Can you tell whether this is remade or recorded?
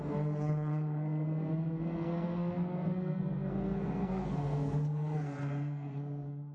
remade